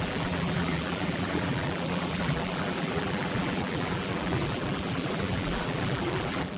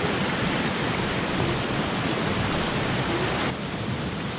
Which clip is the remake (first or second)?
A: first